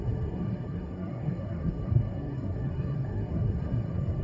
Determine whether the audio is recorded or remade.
remade